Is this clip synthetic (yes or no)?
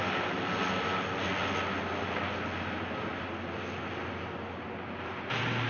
no